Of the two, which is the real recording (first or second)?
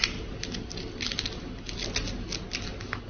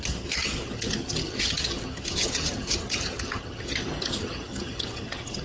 first